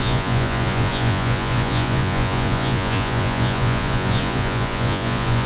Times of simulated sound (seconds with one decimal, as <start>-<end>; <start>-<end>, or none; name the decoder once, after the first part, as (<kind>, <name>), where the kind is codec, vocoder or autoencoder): 0.0-5.5 (vocoder, Vocos)